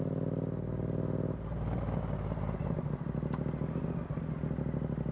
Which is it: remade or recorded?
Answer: recorded